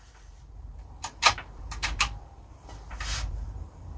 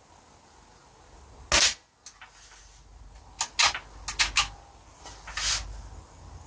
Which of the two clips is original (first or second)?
second